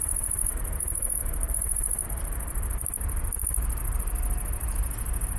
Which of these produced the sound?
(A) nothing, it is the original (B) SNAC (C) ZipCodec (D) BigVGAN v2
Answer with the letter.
A